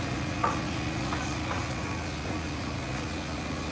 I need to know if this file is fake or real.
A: fake